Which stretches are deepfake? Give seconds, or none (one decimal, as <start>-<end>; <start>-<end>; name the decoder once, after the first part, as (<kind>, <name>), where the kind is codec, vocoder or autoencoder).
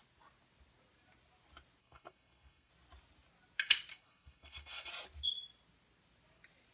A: 1.8-2.7 (codec, SNAC); 3.9-4.9